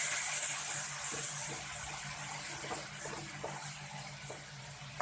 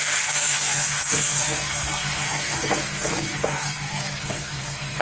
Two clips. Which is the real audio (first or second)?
first